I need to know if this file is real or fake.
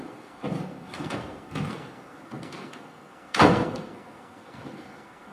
fake